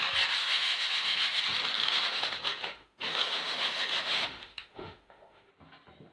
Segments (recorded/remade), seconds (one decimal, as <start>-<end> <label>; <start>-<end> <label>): 0.0-0.4 recorded; 0.4-1.4 remade; 1.4-1.8 recorded; 1.8-5.5 remade; 5.5-6.1 recorded